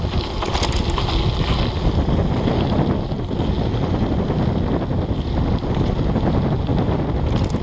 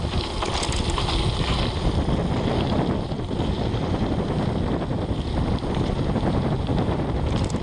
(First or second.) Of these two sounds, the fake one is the second